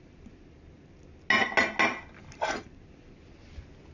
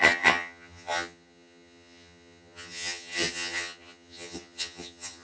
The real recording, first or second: first